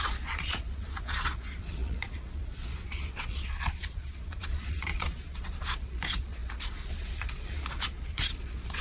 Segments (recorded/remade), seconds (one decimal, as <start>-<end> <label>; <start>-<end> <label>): 0.0-8.8 remade